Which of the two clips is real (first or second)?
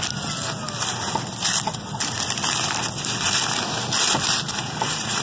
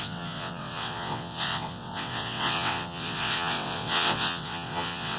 first